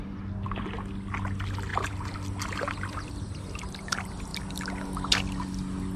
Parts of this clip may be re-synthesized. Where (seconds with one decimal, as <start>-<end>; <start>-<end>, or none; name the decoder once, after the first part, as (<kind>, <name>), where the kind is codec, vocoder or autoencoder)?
none